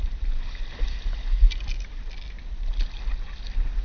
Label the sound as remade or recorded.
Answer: recorded